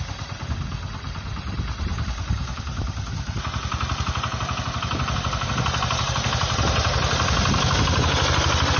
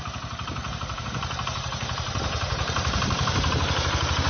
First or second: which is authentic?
first